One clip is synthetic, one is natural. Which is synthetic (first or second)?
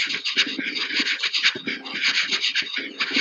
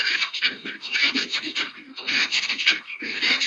second